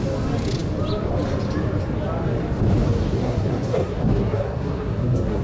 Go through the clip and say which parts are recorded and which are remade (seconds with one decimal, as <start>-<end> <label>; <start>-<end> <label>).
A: 0.0-3.2 recorded; 3.2-5.4 remade